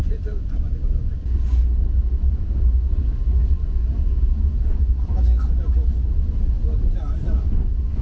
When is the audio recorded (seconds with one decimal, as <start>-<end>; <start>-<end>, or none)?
0.0-6.1; 7.0-8.0